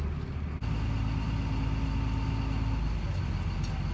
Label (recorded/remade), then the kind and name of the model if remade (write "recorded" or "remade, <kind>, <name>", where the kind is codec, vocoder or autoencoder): recorded